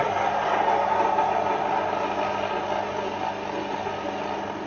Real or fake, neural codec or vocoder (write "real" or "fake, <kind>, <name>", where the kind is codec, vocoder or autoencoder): real